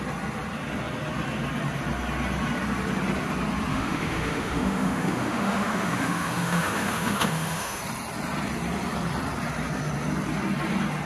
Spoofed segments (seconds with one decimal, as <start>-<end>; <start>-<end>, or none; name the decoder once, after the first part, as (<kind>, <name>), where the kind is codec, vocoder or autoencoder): 3.7-7.8 (autoencoder, DAC-VAE)

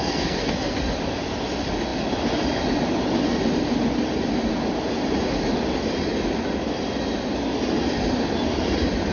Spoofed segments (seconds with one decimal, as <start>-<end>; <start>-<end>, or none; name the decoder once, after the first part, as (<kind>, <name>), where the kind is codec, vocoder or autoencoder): 0.0-0.8 (codec, SNAC)

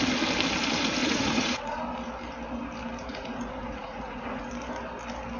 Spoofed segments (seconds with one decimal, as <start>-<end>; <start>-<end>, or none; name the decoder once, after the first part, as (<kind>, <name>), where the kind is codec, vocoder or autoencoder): 1.0-1.8 (vocoder, Vocos); 3.1-4.5

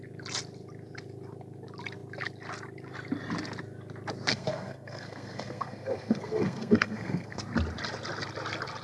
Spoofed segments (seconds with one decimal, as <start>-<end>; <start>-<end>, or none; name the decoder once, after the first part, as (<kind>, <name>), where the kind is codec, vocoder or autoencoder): 4.3-7.4 (codec, SNAC)

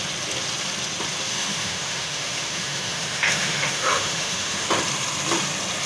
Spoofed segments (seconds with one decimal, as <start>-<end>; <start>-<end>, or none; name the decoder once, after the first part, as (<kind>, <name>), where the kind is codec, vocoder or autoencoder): 1.3-4.7 (autoencoder, DAC-VAE)

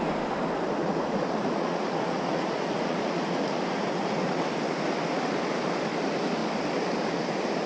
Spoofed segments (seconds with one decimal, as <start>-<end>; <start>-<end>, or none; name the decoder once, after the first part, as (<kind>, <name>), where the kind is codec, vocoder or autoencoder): 0.8-4.4 (vocoder, Vocos)

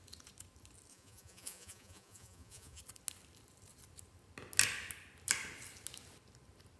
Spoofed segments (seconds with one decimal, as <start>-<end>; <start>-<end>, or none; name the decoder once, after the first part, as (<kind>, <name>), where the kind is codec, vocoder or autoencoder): 0.9-2.8 (vocoder, Vocos)

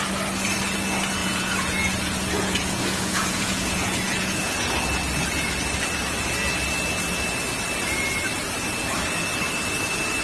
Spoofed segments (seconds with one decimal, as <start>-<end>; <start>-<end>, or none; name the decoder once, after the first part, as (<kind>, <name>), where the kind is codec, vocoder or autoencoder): 1.2-4.7 (vocoder, Vocos)